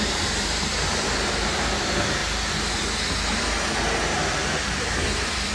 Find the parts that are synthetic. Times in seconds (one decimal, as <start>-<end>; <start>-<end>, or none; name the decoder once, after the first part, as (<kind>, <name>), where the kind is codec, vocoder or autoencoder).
0.0-2.2 (vocoder, BigVGAN v2); 4.0-5.5